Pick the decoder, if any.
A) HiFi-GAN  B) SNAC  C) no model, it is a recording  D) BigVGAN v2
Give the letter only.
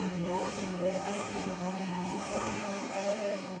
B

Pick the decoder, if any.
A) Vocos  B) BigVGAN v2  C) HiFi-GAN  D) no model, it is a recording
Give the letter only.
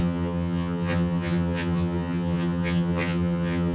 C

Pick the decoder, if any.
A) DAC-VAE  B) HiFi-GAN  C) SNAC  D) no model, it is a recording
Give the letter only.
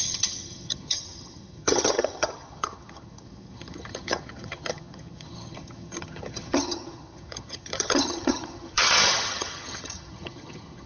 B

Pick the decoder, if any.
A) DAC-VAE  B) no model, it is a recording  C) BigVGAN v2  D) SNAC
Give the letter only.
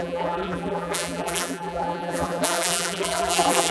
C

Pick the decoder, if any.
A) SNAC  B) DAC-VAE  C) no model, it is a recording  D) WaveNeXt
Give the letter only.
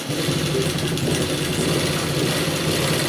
C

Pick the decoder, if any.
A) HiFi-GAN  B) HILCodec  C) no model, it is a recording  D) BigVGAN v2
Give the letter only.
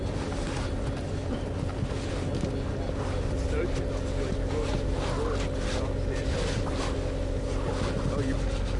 C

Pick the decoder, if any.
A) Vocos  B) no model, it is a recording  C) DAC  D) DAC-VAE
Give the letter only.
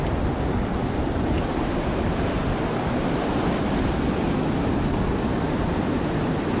B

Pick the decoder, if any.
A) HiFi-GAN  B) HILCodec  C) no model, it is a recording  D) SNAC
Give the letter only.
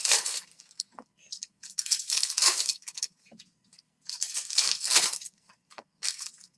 D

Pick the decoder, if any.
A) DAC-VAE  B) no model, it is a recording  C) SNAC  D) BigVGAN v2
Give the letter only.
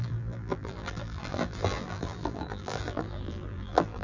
D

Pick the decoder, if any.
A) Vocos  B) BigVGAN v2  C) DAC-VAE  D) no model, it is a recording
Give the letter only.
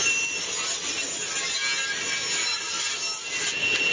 D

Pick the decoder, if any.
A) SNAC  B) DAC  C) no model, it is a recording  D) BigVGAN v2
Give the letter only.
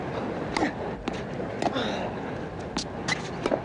C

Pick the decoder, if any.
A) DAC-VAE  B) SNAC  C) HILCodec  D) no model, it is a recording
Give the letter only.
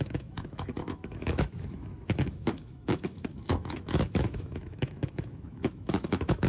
A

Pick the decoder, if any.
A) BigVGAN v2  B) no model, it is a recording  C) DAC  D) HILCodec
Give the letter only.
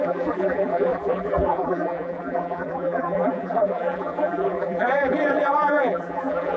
A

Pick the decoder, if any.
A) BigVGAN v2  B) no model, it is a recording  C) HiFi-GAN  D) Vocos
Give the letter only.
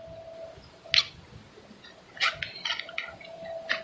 B